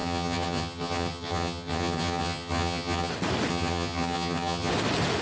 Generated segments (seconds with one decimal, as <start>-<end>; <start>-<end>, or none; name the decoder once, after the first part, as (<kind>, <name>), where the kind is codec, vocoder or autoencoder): 0.0-3.1 (vocoder, HiFi-GAN); 3.5-4.7